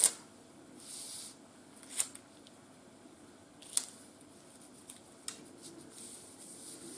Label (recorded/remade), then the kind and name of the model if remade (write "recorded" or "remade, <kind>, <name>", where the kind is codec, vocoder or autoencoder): recorded